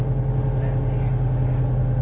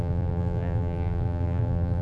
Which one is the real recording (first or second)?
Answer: first